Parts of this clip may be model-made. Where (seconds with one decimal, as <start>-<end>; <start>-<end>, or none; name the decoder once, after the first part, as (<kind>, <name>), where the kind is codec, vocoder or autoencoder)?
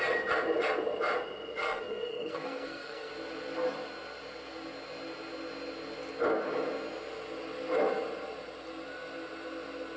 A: 1.6-3.1 (codec, SNAC)